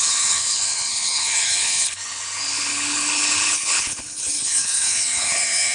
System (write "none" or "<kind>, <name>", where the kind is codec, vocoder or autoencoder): codec, HILCodec